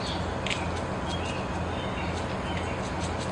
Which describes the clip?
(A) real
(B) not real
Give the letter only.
A